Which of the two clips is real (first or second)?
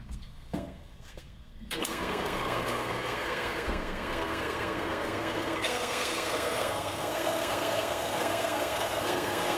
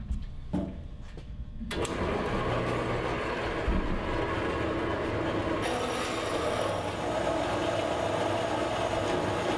second